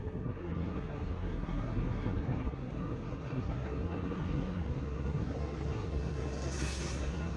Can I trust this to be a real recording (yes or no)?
no